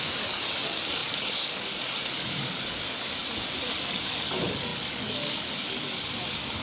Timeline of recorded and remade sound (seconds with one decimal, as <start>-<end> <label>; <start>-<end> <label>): 0.0-3.2 remade; 3.2-3.9 recorded; 3.9-6.6 remade